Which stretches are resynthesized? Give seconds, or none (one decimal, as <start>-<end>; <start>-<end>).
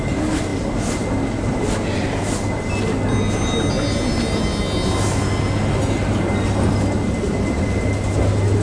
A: none